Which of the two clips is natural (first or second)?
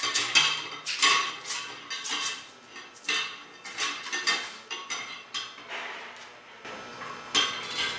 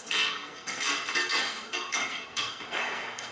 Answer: first